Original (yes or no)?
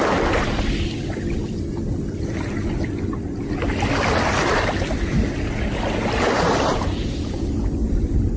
yes